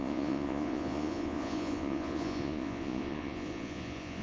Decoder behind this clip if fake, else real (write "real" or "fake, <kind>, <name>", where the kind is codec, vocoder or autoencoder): fake, vocoder, Vocos